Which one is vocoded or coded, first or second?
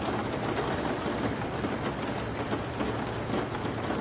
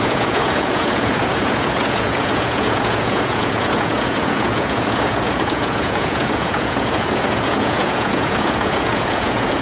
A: second